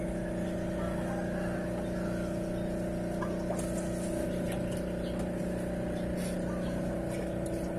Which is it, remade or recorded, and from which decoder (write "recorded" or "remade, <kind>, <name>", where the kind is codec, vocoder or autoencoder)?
recorded